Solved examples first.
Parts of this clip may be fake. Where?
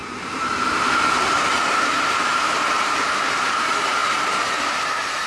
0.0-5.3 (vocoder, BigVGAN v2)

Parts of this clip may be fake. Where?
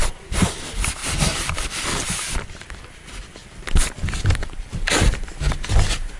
1.0-2.8 (vocoder, BigVGAN v2); 3.4-5.3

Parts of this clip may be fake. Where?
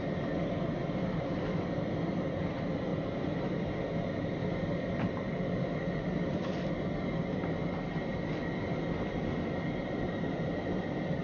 0.8-2.4 (vocoder, BigVGAN v2); 2.9-6.7; 8.1-11.2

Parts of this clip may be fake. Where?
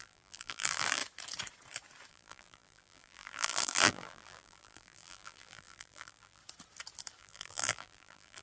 0.0-1.0 (vocoder, BigVGAN v2); 2.1-6.4; 7.2-8.4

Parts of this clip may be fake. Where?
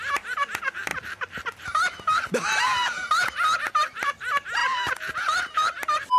0.0-6.2 (vocoder, BigVGAN v2)